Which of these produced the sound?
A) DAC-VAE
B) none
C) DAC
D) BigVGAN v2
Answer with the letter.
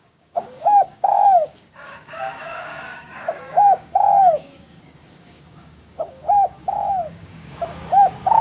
C